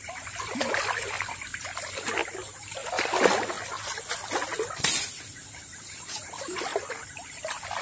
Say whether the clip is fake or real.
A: real